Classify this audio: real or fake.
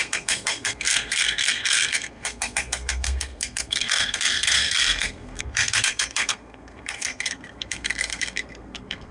fake